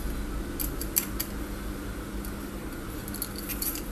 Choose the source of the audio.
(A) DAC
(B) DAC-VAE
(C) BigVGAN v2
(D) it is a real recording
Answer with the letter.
D